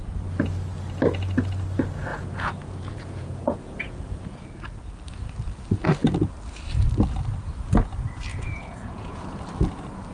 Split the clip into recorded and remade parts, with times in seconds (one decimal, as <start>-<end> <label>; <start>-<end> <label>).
0.0-2.1 recorded; 2.1-4.4 remade; 4.4-8.3 recorded; 8.3-9.5 remade; 9.5-10.1 recorded